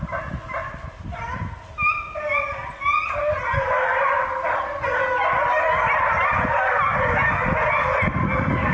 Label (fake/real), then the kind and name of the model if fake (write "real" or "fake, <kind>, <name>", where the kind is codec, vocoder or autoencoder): real